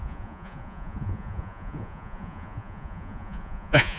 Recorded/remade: remade